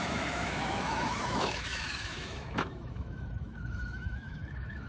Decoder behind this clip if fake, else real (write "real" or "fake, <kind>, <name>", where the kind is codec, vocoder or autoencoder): fake, autoencoder, DAC-VAE